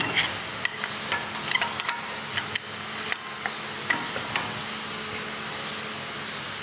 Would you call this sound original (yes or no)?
yes